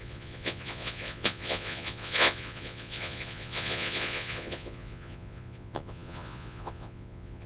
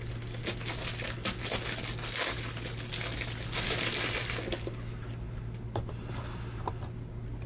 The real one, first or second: second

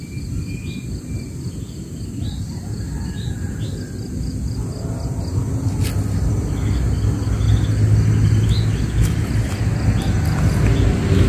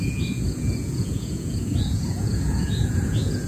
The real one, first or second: first